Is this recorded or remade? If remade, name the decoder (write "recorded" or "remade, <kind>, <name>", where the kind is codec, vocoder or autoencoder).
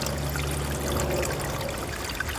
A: recorded